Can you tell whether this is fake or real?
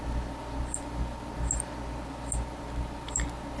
real